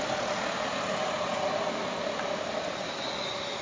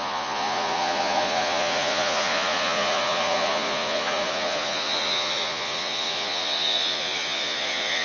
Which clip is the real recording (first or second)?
first